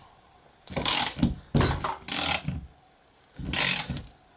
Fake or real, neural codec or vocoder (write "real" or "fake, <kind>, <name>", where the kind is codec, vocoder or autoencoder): real